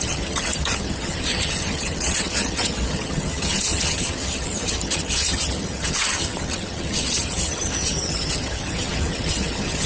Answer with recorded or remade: remade